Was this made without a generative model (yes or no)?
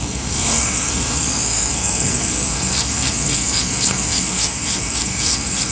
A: no